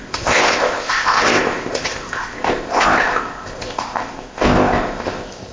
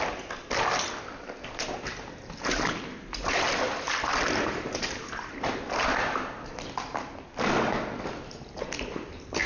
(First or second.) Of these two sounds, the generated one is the first